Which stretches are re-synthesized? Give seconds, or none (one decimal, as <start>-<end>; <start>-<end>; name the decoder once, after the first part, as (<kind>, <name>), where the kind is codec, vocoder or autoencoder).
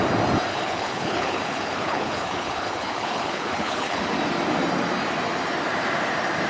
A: 0.5-4.0 (codec, HILCodec)